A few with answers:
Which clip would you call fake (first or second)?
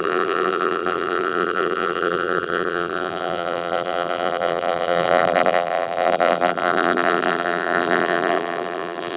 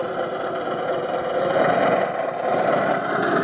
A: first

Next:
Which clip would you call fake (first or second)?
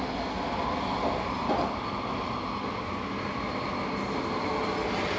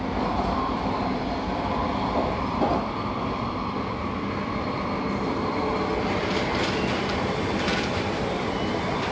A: second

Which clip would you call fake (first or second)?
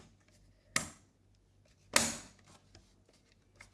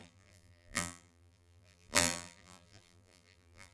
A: second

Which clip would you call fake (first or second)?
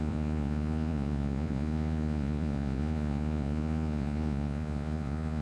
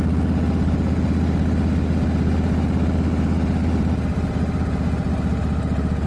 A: first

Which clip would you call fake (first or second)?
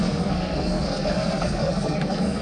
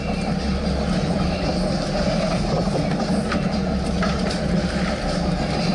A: first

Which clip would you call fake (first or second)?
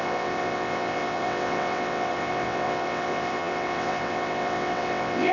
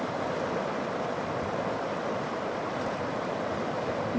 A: first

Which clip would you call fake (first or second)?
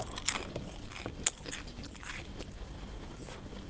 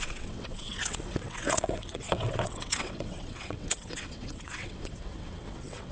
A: second